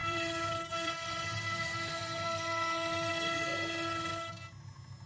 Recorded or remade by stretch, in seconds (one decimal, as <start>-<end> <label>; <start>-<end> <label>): 0.0-3.1 remade; 3.1-5.1 recorded